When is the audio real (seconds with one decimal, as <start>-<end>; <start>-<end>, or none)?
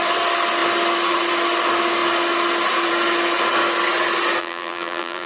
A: 0.0-4.4